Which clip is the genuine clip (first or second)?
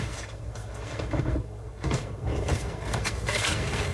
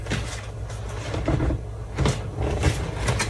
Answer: second